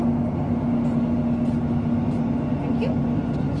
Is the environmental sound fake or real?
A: real